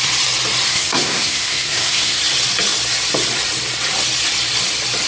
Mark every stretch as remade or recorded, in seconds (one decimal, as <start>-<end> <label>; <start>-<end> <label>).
0.0-0.7 recorded; 0.7-2.2 remade; 2.2-5.1 recorded